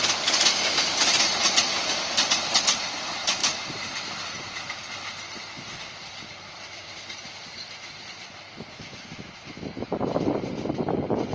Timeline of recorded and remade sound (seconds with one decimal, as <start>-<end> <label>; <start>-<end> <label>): 0.0-1.4 recorded; 1.4-2.9 remade; 2.9-11.3 recorded